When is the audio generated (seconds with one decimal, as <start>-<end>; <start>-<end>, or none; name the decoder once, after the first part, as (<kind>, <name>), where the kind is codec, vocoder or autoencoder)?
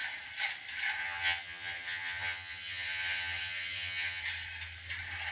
1.0-4.2 (vocoder, HiFi-GAN)